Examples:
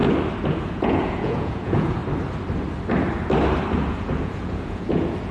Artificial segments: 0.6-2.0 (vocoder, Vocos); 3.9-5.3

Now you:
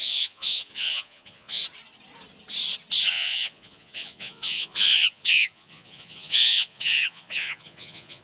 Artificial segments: 0.0-1.6 (vocoder, Vocos); 3.1-8.2

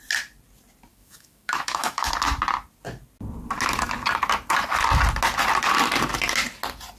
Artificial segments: 0.9-2.1 (autoencoder, DAC-VAE)

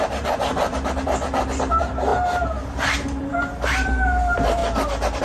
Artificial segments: 0.0-4.6 (vocoder, BigVGAN v2)

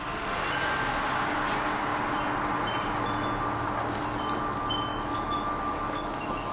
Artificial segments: 4.9-6.5 (autoencoder, DAC-VAE)